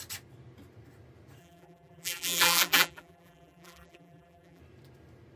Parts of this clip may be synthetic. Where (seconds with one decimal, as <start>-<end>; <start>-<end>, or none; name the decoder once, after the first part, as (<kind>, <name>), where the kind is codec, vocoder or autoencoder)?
1.4-4.6 (vocoder, BigVGAN v2)